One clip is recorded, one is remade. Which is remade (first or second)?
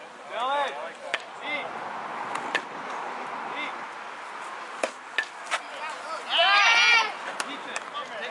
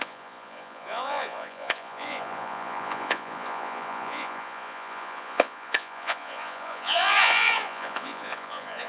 second